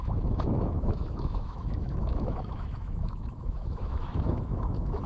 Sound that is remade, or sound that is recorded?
remade